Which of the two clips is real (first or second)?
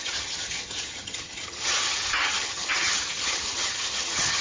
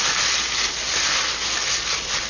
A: second